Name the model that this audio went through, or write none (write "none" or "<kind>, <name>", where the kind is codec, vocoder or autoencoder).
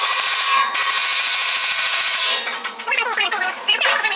vocoder, Vocos